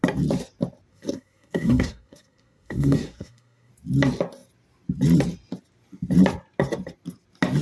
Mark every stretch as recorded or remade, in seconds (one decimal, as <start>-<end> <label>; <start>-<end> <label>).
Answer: 0.0-0.9 recorded; 0.9-3.7 remade; 3.7-7.6 recorded